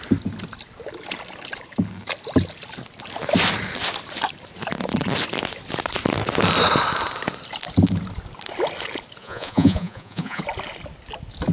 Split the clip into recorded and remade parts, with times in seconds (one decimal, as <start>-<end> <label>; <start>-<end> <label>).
0.0-9.2 recorded; 9.2-10.4 remade; 10.4-11.5 recorded